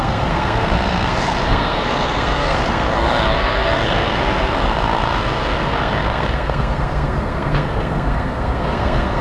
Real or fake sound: fake